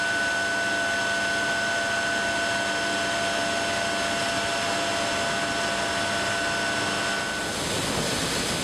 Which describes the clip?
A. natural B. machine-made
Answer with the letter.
A